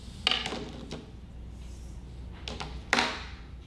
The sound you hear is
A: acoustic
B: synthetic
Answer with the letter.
A